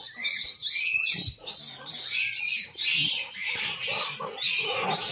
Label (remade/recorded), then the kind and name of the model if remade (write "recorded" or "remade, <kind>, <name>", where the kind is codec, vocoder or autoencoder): recorded